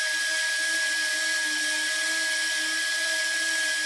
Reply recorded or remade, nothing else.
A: recorded